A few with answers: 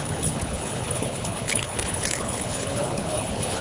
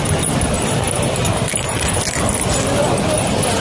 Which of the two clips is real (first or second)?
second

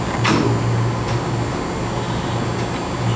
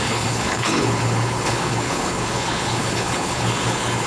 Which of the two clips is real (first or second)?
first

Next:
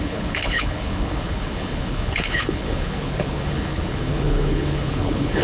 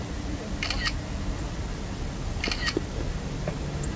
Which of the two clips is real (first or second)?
second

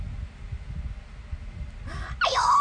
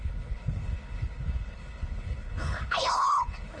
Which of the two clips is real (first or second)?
first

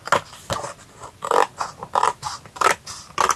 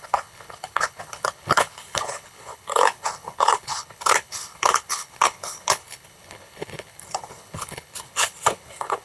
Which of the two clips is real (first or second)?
first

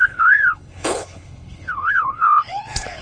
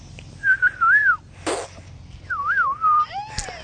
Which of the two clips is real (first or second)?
second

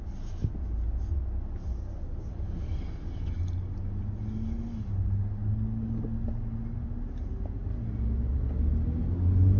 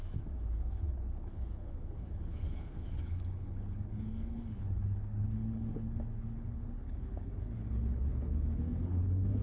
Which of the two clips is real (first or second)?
first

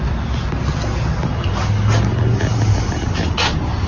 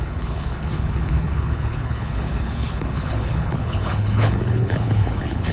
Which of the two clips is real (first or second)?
first